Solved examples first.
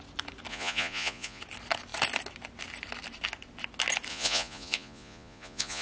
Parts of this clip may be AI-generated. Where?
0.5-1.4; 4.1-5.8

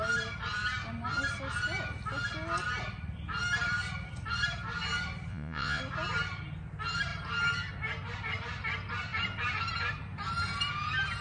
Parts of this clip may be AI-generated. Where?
5.3-5.8

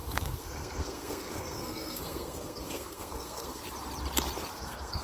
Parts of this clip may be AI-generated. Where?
0.0-3.6; 4.5-5.0

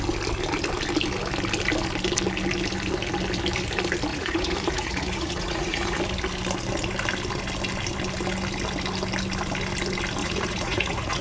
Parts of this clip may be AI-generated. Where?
4.1-6.0; 10.2-11.2